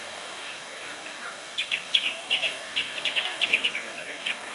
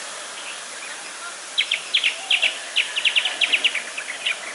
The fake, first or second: first